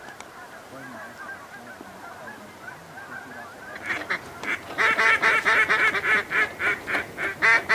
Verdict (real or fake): real